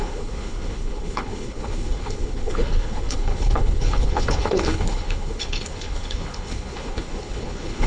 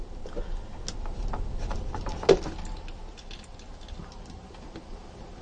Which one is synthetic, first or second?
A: first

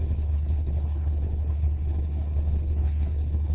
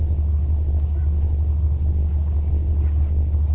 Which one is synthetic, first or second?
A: first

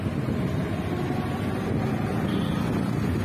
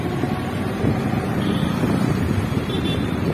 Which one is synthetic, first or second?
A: second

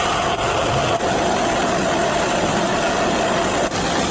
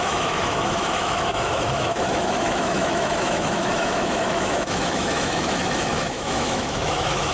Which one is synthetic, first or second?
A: second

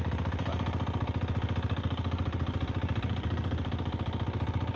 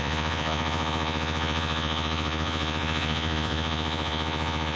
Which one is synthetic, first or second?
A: second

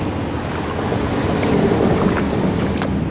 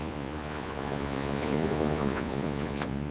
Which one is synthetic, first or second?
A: second